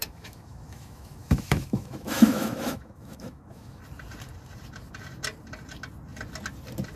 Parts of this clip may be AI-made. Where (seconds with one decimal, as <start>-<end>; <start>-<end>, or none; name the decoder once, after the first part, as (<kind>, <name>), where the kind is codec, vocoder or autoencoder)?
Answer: 0.0-3.8 (autoencoder, DAC-VAE)

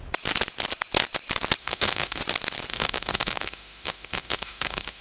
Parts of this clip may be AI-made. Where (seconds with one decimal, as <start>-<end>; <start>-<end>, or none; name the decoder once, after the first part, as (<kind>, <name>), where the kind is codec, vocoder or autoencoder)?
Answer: 1.6-2.2 (autoencoder, DAC-VAE); 2.7-5.0

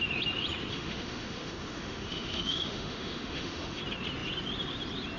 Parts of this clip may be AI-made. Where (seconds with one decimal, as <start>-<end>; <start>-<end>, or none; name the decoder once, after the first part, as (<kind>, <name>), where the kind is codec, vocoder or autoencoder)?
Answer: 0.7-3.8 (autoencoder, DAC-VAE)

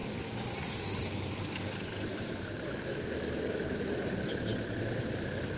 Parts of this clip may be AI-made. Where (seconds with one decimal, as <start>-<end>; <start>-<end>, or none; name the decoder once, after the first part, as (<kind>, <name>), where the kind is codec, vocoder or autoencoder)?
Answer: 2.7-4.0 (autoencoder, DAC-VAE)